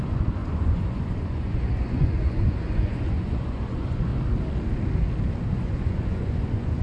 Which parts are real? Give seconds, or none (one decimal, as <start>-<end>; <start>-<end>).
4.1-5.5